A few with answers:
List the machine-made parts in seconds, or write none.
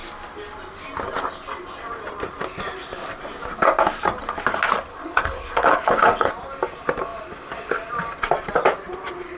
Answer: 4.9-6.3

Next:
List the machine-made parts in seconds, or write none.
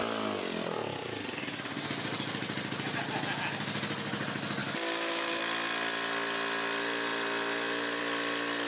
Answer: 4.6-5.4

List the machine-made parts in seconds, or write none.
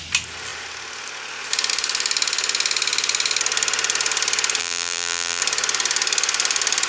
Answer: 4.6-5.4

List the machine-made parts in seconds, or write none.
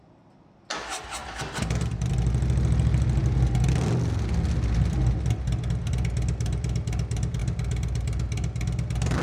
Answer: none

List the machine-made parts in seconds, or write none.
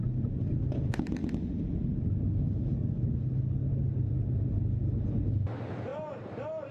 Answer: none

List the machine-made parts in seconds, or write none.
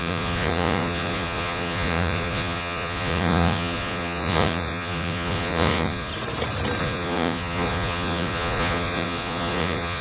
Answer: 0.0-6.1; 6.8-10.0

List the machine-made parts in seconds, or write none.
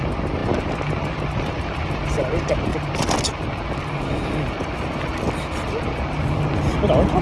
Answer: 0.0-2.7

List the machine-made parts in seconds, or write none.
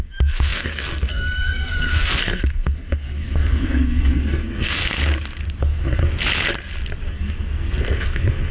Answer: 0.0-4.8; 5.6-6.0; 7.1-8.5